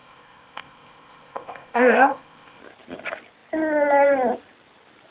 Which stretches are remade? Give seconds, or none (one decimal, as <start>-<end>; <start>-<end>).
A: 0.0-2.6